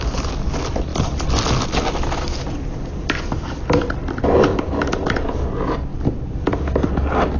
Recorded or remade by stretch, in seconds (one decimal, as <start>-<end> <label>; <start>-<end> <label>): 0.0-4.5 recorded; 4.5-5.0 remade; 5.0-7.4 recorded